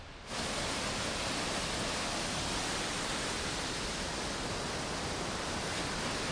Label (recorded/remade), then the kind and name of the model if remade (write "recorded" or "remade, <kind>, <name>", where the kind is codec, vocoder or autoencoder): recorded